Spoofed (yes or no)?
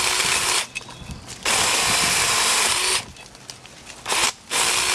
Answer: no